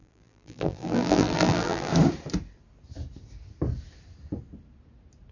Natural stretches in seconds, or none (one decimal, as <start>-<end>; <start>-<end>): 1.9-5.3